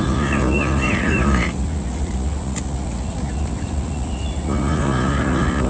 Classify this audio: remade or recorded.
remade